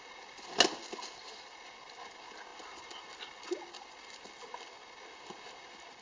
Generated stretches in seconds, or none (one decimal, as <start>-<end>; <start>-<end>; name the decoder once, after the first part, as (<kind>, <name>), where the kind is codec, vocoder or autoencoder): none